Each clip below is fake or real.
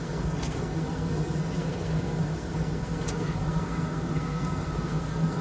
fake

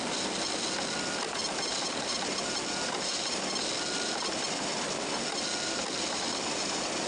real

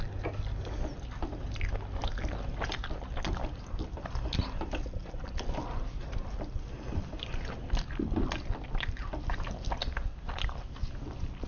real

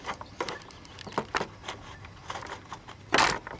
real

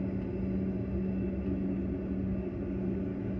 real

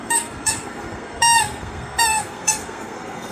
fake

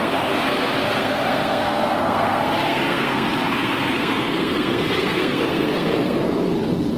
fake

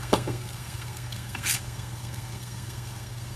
fake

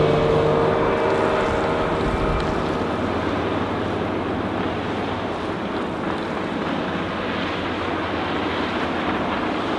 real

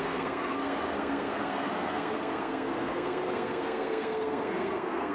fake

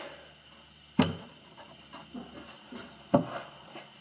real